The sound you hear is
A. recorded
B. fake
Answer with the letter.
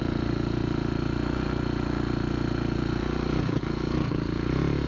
B